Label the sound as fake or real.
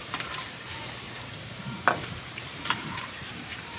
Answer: fake